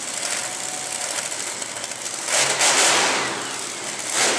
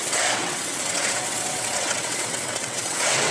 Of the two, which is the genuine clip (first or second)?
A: first